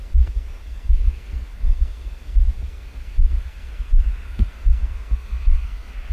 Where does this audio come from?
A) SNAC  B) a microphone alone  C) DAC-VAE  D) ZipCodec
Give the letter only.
A